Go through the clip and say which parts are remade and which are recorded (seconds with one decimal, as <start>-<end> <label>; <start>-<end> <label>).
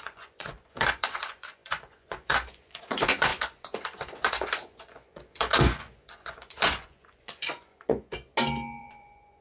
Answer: 0.0-8.3 remade; 8.3-8.8 recorded; 8.8-9.4 remade